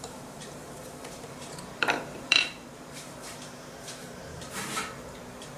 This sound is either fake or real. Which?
fake